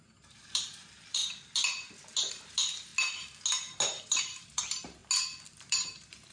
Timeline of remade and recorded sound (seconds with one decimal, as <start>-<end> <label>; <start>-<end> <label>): 0.0-1.2 remade; 1.2-2.3 recorded; 2.3-2.9 remade; 2.9-4.0 recorded; 4.0-5.0 remade; 5.0-5.6 recorded; 5.6-6.3 remade